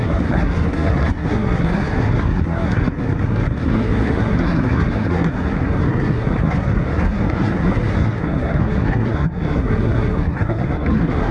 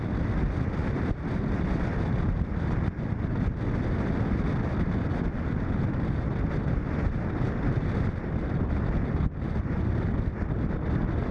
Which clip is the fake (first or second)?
first